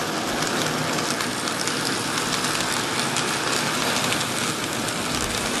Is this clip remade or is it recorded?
recorded